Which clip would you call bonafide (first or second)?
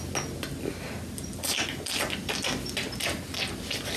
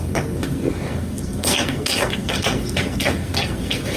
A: first